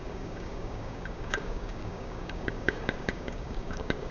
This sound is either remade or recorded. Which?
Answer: remade